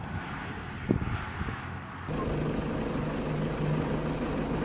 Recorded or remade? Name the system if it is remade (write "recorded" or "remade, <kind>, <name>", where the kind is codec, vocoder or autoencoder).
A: recorded